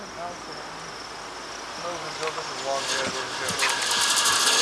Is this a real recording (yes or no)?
yes